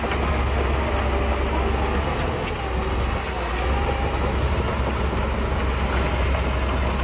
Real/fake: real